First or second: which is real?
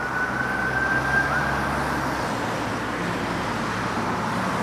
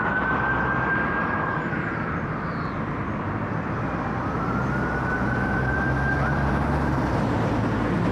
first